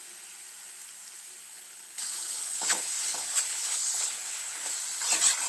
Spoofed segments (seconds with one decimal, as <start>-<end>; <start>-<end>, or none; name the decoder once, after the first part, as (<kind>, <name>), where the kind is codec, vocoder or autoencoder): 1.4-4.7 (codec, HILCodec)